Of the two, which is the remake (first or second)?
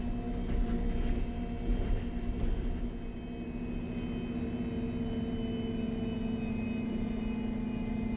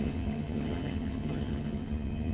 second